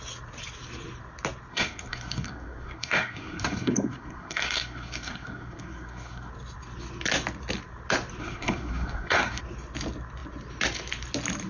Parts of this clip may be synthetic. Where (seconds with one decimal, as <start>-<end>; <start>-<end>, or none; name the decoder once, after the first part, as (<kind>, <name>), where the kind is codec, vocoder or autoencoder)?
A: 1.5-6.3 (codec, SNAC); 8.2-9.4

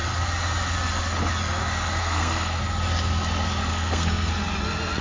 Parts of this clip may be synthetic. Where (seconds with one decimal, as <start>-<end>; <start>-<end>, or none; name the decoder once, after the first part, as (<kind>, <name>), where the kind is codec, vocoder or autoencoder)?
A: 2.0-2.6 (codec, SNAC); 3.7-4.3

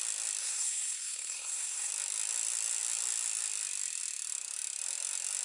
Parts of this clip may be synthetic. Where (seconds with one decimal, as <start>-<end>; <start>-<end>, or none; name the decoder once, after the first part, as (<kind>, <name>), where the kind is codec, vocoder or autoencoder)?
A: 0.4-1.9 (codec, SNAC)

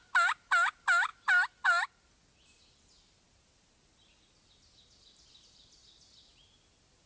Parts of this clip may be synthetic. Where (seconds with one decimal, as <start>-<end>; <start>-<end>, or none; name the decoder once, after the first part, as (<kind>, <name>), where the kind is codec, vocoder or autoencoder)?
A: none

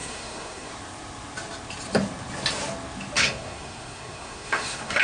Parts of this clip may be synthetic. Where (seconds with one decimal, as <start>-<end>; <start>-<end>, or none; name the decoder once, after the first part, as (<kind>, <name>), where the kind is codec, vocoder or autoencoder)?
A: 0.0-0.7 (codec, SNAC); 3.2-5.0

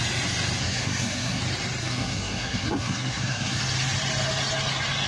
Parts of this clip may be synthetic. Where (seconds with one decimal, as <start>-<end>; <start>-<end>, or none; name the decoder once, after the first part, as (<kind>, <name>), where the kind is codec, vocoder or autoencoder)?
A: 0.6-1.4 (codec, SNAC); 1.8-3.6

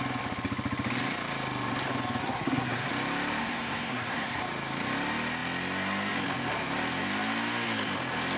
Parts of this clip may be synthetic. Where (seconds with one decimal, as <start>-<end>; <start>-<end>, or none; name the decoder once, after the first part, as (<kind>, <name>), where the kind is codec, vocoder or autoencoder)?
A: 2.2-2.9 (codec, SNAC); 3.4-4.4

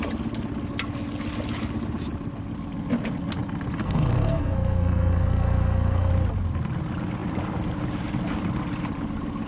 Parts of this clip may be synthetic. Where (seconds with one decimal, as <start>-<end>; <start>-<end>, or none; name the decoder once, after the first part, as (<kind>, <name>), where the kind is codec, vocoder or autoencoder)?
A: 3.8-6.1 (codec, SNAC)